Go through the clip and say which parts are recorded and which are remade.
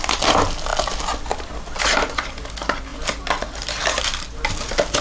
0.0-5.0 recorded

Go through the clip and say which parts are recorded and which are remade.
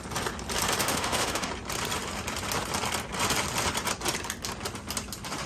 0.0-0.8 recorded; 0.8-1.5 remade; 1.5-5.5 recorded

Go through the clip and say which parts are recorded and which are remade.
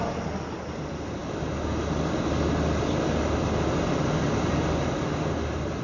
0.0-5.8 recorded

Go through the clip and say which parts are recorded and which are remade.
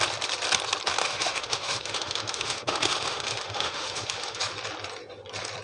0.0-1.0 recorded; 1.0-4.4 remade; 4.4-5.6 recorded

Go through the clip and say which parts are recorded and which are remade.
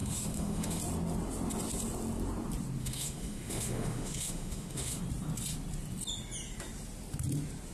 0.0-0.8 remade; 0.8-2.8 recorded; 2.8-5.0 remade; 5.0-7.7 recorded